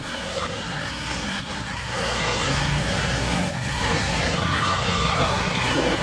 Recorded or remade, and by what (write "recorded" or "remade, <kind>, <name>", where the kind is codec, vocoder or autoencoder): remade, codec, SNAC